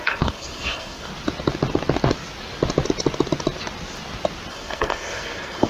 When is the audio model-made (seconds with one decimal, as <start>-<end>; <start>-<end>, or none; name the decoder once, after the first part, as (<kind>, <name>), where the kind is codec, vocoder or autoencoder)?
0.0-1.1 (codec, SNAC); 4.5-5.7